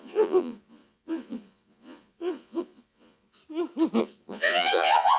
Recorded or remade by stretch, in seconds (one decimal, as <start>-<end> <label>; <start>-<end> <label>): 0.0-3.4 remade; 3.4-4.0 recorded; 4.0-5.2 remade